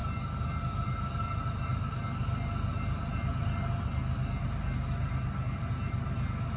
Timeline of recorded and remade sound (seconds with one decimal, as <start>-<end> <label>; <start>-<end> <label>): 0.0-6.6 recorded